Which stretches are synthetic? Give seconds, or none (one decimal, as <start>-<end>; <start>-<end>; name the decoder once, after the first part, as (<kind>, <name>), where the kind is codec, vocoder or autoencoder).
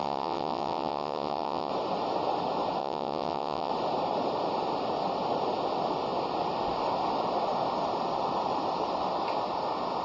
0.0-1.7 (vocoder, WaveNeXt); 2.8-3.7